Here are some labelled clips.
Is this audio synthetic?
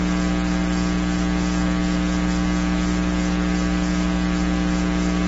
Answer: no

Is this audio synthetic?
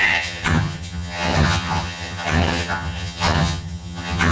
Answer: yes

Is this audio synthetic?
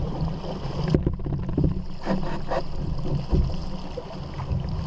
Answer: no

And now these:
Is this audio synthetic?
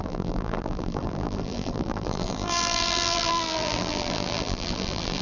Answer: yes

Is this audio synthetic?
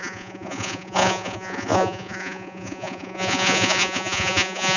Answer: yes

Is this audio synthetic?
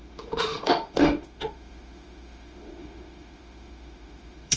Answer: yes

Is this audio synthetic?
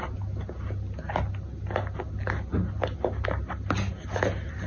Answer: no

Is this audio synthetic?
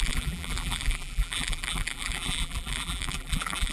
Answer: yes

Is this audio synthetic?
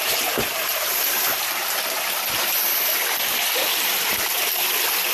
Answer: no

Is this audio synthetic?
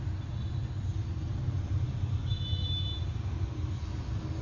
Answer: no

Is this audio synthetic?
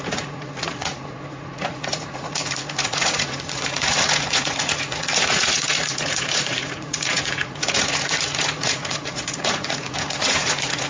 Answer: yes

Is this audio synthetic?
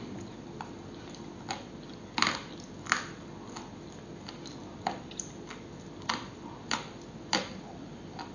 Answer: no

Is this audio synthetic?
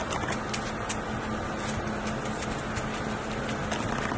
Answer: no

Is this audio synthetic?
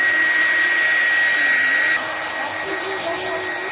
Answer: no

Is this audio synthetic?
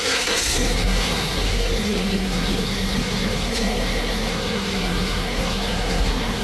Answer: yes